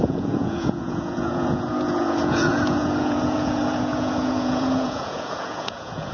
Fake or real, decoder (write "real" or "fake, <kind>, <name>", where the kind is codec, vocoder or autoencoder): fake, vocoder, Vocos